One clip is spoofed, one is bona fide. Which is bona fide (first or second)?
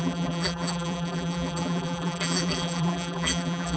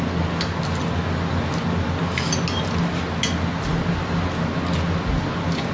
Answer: second